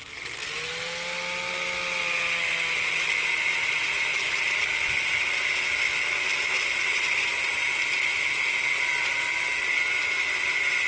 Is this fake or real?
real